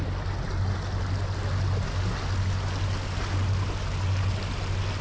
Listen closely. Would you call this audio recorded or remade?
recorded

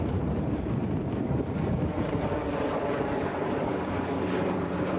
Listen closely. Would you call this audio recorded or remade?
remade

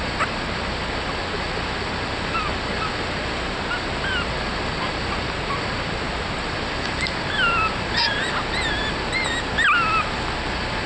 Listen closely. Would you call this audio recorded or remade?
recorded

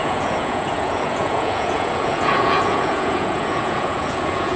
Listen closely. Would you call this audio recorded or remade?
remade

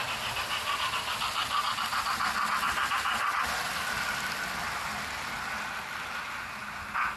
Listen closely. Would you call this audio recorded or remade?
recorded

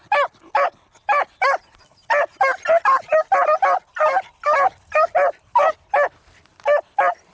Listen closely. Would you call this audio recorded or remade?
recorded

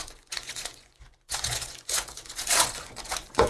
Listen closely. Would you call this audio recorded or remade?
remade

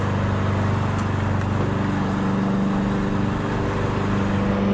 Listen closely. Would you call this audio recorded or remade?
recorded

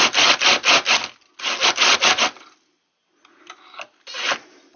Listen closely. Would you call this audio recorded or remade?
recorded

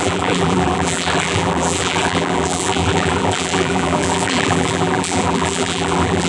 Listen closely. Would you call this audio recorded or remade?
remade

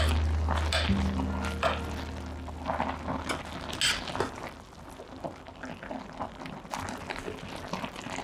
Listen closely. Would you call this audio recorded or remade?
recorded